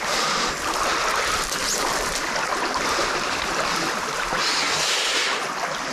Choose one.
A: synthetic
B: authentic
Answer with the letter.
B